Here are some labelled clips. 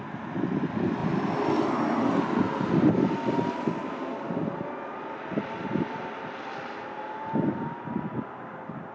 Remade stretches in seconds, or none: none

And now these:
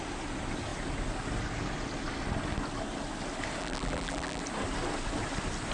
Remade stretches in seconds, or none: 3.6-4.4

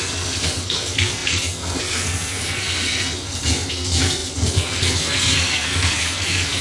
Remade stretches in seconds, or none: 0.0-6.6

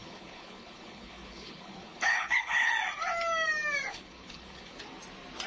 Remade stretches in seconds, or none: 0.0-2.7; 3.9-4.8

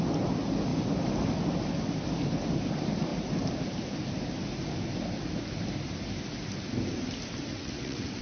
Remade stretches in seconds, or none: 7.5-8.2

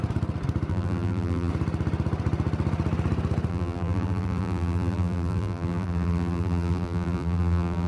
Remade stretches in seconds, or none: 0.7-1.5; 3.5-7.9

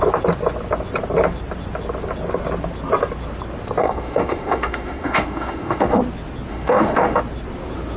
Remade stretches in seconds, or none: 3.8-6.0; 6.5-7.2